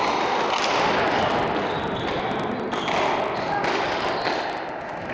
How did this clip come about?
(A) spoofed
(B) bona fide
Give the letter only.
B